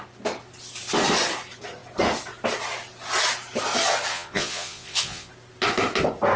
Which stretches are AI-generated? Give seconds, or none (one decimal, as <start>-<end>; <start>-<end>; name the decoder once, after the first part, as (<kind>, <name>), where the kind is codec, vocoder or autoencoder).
4.1-5.3 (vocoder, Vocos)